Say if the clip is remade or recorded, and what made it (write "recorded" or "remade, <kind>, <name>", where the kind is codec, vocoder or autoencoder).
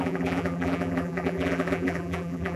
remade, vocoder, BigVGAN v2